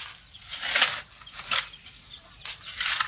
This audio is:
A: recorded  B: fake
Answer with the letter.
A